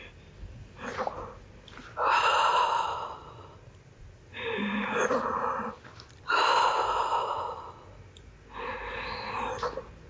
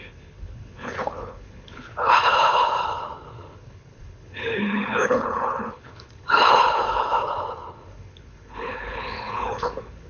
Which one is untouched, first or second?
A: first